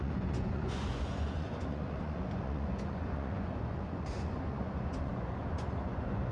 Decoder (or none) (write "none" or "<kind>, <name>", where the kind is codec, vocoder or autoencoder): vocoder, Vocos